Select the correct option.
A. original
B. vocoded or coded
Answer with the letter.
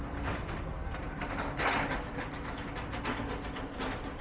A